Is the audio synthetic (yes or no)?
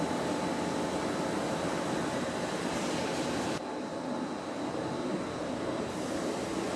no